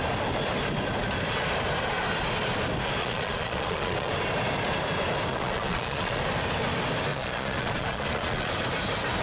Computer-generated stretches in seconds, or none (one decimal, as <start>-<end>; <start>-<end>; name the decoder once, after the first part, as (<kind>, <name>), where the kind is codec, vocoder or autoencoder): 3.0-4.1 (vocoder, Vocos); 5.3-6.2; 7.1-8.5